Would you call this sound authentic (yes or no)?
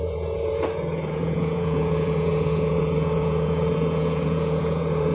no